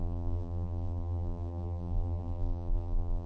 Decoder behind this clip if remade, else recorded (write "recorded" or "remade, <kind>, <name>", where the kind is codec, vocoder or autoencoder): remade, vocoder, BigVGAN v2